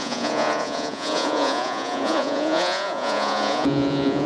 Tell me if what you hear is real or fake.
fake